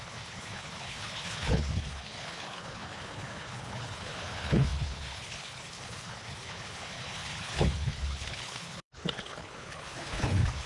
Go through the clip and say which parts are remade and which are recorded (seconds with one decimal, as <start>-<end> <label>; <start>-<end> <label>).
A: 0.0-10.7 remade